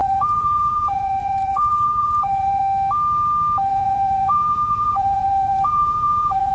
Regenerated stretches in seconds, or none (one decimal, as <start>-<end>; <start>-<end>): 0.0-2.6; 3.7-6.5